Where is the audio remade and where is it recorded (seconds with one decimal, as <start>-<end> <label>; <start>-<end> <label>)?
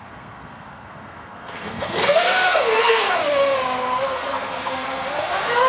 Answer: 0.0-3.2 remade; 3.2-4.1 recorded; 4.1-5.7 remade